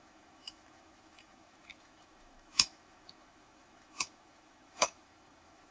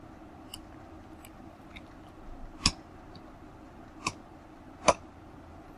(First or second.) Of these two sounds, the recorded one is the second